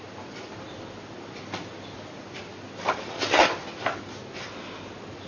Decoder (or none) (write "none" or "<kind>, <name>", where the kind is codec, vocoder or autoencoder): none